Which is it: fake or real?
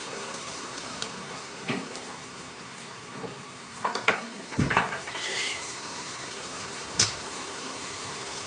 fake